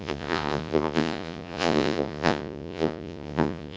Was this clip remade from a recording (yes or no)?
yes